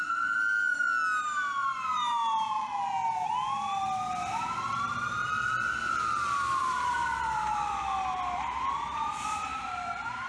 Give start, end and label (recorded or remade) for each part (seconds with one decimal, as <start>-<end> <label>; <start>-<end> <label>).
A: 0.0-1.6 recorded; 1.6-2.7 remade; 2.7-6.6 recorded; 6.6-7.7 remade; 7.7-8.9 recorded; 8.9-10.3 remade